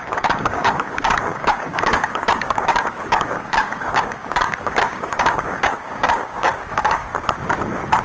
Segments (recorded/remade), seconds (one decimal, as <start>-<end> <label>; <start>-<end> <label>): 0.0-7.1 remade; 7.1-8.0 recorded